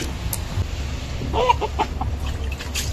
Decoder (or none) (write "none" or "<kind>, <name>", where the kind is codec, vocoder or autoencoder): none